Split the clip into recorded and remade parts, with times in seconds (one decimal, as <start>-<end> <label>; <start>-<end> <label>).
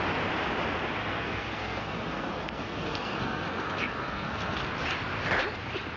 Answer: 0.0-1.0 recorded; 1.0-4.6 remade; 4.6-6.0 recorded